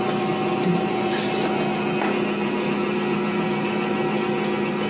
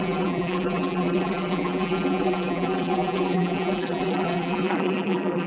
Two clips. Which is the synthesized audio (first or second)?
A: second